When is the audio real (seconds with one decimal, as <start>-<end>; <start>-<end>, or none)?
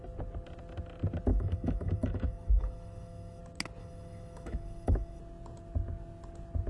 0.0-1.3; 3.4-3.8; 5.2-6.7